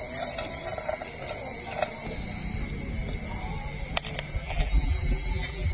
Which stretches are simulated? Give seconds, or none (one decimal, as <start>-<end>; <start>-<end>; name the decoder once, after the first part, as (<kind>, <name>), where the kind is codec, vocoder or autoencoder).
4.4-5.7 (vocoder, BigVGAN v2)